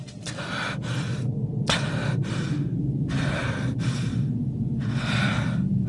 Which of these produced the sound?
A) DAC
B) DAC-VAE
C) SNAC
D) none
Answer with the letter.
D